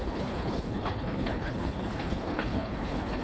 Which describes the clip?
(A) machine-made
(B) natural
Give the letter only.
A